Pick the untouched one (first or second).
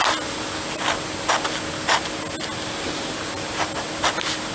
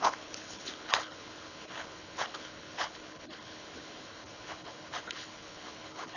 first